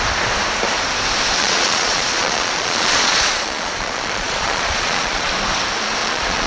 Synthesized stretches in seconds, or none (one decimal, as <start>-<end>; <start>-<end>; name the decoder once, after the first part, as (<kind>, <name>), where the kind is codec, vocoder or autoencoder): 1.4-5.3 (vocoder, Vocos); 6.0-6.5